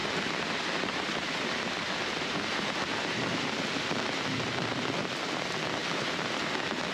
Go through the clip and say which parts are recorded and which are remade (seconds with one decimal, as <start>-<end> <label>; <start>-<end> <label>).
0.0-4.1 remade; 4.1-5.8 recorded; 5.8-6.5 remade; 6.5-6.9 recorded